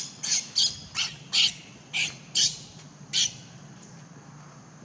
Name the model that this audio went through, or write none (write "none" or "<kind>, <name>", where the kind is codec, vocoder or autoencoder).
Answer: none